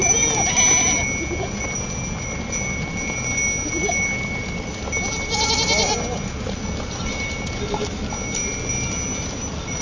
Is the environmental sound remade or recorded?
recorded